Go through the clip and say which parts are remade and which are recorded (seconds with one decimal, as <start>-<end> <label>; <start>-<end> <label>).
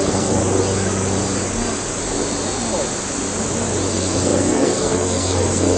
0.0-0.4 remade; 0.4-3.9 recorded; 3.9-5.8 remade